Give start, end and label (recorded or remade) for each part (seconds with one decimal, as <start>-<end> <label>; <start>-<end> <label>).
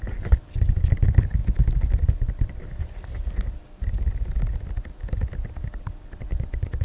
0.0-6.8 recorded